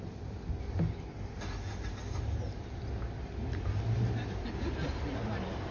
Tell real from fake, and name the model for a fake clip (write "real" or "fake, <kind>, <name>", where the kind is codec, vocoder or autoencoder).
real